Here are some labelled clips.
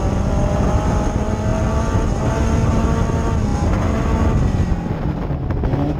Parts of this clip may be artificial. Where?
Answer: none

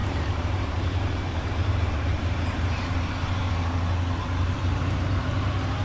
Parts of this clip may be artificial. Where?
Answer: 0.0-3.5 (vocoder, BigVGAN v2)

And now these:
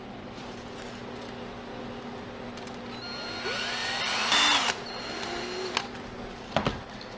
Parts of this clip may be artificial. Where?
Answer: none